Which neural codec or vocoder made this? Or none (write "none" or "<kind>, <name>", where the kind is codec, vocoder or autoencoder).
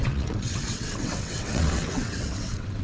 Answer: vocoder, WaveNeXt